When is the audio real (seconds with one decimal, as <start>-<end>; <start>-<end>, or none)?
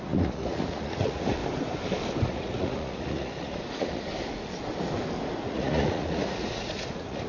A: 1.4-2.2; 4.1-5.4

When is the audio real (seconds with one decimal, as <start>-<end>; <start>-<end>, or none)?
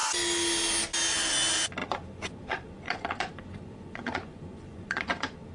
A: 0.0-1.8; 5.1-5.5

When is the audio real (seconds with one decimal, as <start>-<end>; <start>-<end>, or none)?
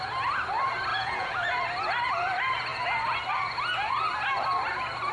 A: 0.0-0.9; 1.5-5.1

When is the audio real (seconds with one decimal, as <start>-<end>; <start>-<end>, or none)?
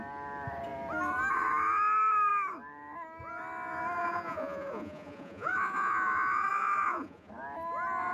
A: 0.0-4.0; 7.3-8.1